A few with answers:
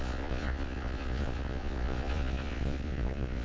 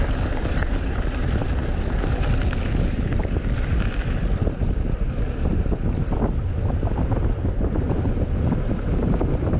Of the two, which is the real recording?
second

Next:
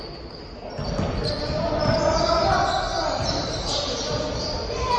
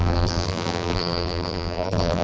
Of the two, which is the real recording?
first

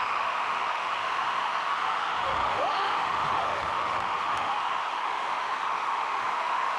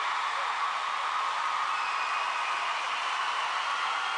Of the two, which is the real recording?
second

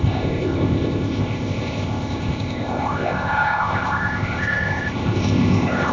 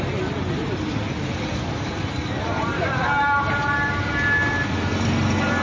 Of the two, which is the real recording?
second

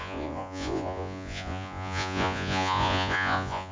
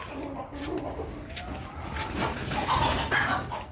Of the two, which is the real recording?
second